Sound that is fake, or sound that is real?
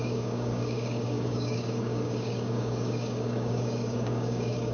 fake